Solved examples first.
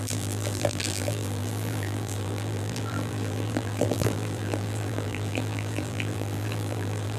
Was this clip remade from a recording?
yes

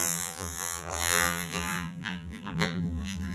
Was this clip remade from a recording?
yes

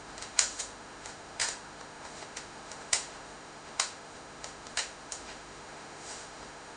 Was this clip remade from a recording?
yes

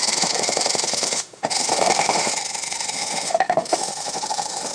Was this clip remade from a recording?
yes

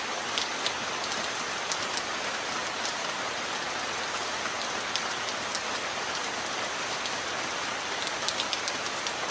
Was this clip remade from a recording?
yes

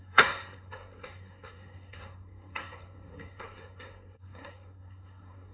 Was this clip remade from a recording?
yes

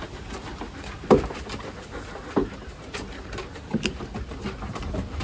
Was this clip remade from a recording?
no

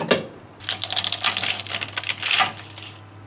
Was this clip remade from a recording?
no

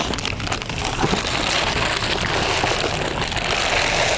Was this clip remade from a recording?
no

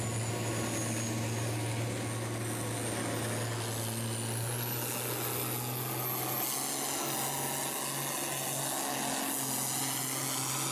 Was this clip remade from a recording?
no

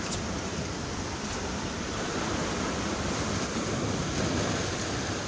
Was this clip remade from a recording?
no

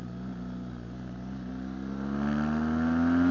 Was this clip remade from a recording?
no